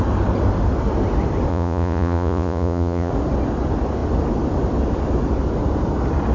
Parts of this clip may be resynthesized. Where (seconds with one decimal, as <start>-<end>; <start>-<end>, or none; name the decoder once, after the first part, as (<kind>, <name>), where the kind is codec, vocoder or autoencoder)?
1.5-3.1 (vocoder, Vocos)